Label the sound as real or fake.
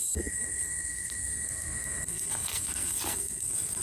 fake